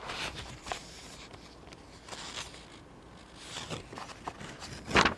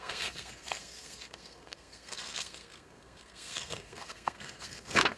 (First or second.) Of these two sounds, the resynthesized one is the second